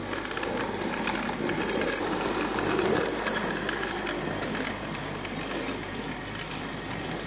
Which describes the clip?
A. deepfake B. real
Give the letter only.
B